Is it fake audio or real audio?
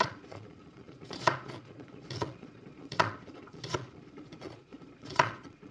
fake